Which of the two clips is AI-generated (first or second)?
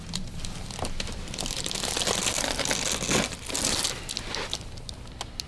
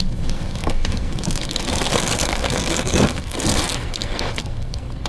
second